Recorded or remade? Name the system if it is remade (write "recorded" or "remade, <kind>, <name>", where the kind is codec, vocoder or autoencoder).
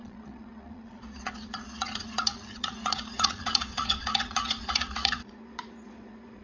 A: remade, vocoder, Vocos